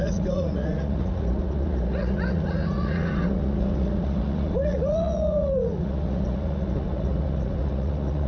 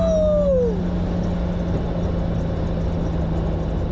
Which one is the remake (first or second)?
first